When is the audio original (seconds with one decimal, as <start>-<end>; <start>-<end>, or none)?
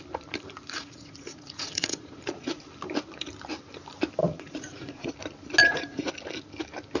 0.0-0.8; 2.6-4.2; 5.1-5.6; 6.1-7.0